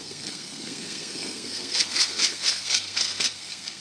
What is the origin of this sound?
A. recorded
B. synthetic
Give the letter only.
B